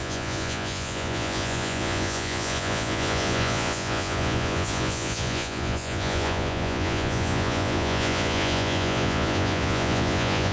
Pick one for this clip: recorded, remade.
remade